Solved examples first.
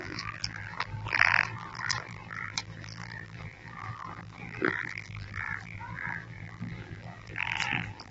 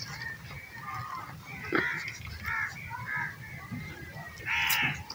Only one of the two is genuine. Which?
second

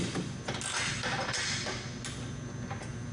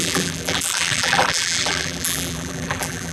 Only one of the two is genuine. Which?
first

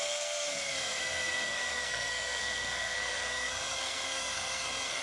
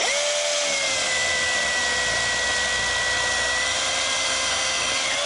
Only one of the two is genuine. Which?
second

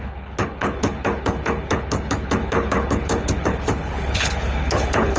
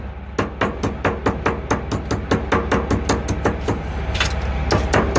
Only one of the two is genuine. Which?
second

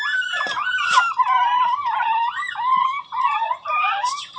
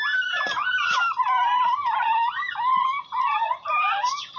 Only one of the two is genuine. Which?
second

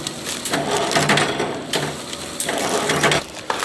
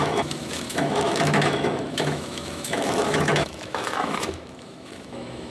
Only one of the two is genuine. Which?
first